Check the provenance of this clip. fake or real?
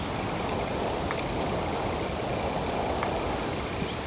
real